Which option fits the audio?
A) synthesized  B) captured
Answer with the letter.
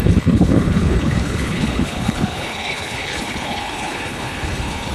A